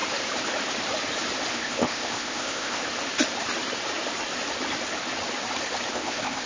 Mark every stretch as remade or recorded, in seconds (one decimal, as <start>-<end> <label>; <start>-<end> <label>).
0.0-1.5 recorded; 1.5-2.8 remade; 2.8-5.9 recorded; 5.9-6.5 remade